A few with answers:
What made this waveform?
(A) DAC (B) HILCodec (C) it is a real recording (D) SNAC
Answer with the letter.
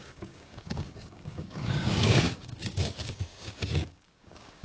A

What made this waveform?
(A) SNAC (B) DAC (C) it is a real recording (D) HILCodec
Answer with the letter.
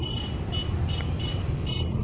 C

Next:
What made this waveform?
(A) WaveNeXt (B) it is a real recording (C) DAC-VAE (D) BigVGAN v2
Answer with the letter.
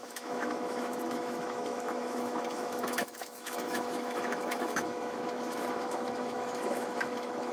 C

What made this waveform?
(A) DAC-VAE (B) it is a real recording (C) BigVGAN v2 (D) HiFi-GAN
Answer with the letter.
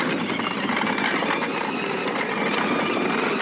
B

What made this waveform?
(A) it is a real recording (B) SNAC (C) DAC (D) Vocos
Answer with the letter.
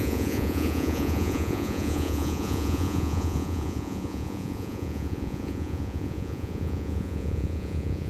D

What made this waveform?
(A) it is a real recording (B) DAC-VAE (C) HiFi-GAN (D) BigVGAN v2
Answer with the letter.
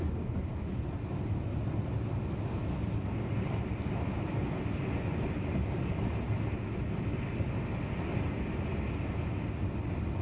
A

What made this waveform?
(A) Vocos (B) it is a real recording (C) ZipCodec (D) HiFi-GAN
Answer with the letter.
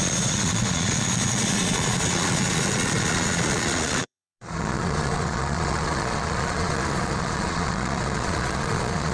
A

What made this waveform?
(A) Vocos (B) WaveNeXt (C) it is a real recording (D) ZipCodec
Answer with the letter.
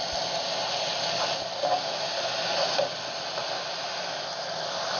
C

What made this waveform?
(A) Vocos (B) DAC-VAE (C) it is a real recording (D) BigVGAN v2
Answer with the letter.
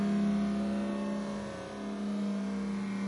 C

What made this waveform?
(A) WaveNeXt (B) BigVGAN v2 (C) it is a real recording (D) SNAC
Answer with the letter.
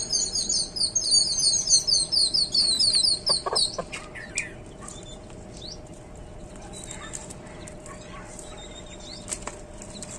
C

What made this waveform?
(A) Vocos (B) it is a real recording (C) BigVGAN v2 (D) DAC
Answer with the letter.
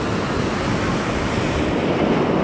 B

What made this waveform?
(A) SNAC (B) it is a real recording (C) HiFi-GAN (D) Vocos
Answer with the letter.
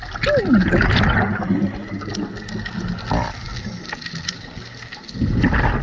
B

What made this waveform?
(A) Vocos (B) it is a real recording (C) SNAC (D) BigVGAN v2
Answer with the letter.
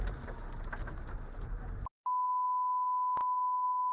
B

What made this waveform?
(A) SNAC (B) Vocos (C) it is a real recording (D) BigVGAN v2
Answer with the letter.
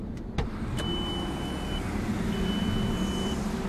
C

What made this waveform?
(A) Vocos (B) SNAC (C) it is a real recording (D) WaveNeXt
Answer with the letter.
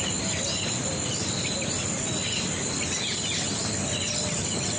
C